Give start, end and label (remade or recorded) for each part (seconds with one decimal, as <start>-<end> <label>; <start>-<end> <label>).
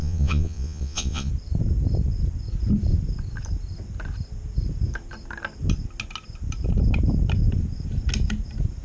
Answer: 0.0-1.3 remade; 1.3-8.8 recorded